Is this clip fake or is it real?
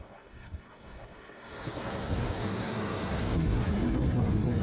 fake